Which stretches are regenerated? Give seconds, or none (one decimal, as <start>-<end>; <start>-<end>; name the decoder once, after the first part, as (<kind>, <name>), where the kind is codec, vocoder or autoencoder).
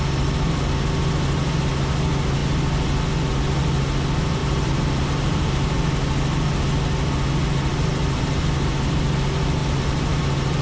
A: 4.4-5.9 (vocoder, BigVGAN v2); 7.7-8.4; 9.6-10.2